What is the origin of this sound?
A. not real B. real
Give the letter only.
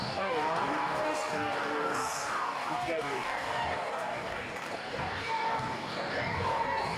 A